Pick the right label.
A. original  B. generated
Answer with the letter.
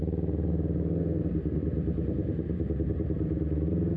A